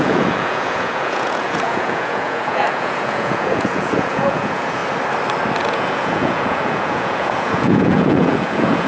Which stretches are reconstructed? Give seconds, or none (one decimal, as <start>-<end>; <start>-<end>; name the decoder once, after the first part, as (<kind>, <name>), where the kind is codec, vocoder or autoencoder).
0.0-4.8 (vocoder, Vocos); 5.6-8.9